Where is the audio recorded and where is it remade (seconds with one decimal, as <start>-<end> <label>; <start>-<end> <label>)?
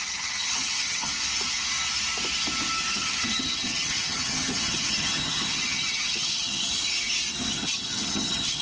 0.0-1.1 remade; 1.1-2.9 recorded; 2.9-6.7 remade; 6.7-7.5 recorded; 7.5-8.6 remade